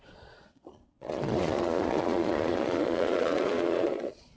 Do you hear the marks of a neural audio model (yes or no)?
yes